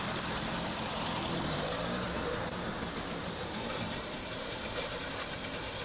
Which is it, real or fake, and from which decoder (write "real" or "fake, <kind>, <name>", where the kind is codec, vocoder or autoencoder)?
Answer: fake, vocoder, BigVGAN v2